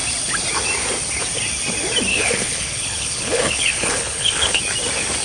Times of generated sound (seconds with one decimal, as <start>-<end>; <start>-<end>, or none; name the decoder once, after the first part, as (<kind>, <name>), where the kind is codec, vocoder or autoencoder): 2.1-4.6 (codec, HILCodec)